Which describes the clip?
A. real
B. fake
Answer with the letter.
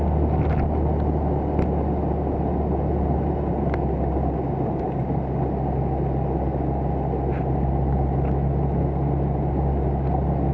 A